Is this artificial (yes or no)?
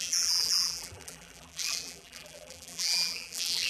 yes